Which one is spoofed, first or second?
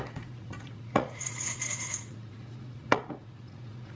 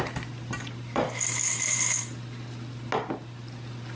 first